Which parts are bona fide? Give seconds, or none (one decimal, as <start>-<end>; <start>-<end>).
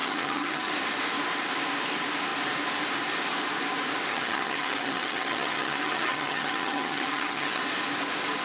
0.7-4.1; 7.6-8.4